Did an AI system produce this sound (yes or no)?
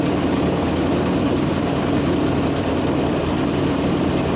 no